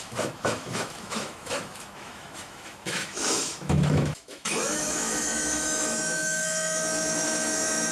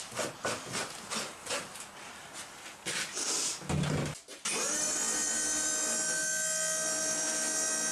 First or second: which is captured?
second